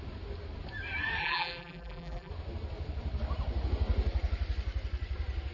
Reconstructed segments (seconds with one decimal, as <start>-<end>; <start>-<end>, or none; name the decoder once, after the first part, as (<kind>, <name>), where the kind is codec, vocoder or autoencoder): 1.2-2.3 (vocoder, BigVGAN v2)